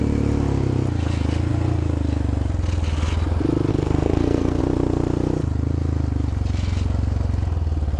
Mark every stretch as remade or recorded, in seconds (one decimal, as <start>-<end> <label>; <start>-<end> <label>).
0.0-3.7 recorded; 3.7-4.6 remade; 4.6-8.0 recorded